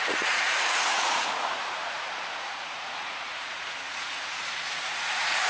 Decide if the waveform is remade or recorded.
remade